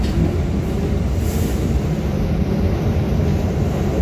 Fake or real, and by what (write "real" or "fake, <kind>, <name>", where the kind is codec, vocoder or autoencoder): real